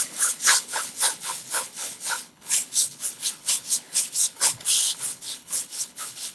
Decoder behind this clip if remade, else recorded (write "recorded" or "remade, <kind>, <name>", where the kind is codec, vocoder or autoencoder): remade, codec, HILCodec